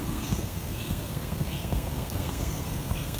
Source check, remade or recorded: remade